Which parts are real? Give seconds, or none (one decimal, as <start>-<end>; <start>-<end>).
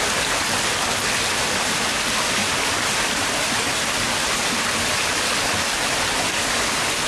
0.0-2.4; 6.6-7.1